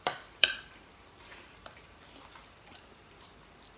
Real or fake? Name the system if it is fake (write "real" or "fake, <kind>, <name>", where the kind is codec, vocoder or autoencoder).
fake, vocoder, BigVGAN v2